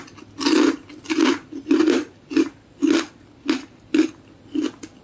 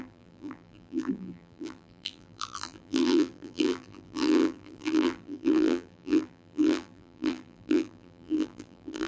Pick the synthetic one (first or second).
second